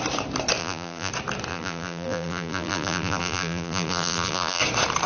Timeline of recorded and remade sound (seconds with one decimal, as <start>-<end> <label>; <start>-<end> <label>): 0.0-0.6 recorded; 0.6-1.1 remade; 1.1-1.5 recorded; 1.5-4.6 remade; 4.6-5.1 recorded